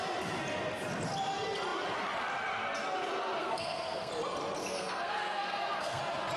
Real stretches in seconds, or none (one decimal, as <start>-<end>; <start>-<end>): 0.0-3.4; 4.1-4.6; 6.0-6.4